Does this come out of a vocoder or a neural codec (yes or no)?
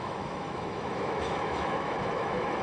yes